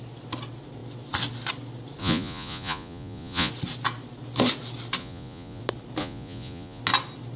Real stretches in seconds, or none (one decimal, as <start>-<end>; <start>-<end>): 0.0-2.0; 3.5-5.0; 5.6-6.0; 6.8-7.4